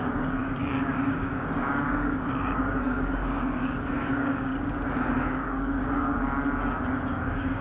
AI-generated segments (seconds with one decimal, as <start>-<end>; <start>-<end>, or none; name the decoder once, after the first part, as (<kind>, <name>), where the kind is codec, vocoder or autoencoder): 0.0-4.5 (codec, DAC); 5.3-6.3; 6.9-7.6